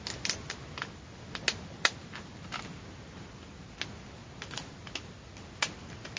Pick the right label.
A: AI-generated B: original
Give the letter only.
B